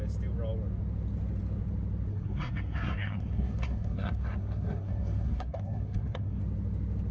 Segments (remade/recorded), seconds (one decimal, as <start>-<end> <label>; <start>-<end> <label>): 0.0-2.1 recorded; 2.1-6.4 remade; 6.4-7.1 recorded